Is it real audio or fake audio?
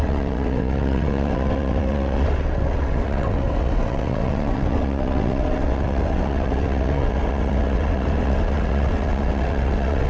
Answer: fake